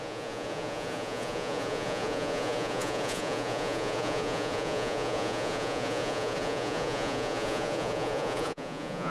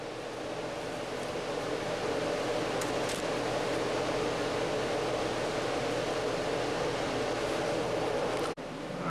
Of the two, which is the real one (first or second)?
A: second